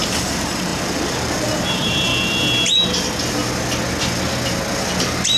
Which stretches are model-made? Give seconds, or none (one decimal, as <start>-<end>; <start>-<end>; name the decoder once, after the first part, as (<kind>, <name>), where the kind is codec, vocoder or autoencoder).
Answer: 0.0-2.1 (vocoder, BigVGAN v2)